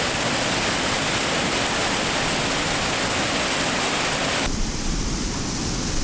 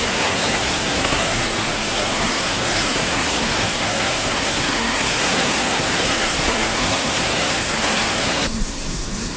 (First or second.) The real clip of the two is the first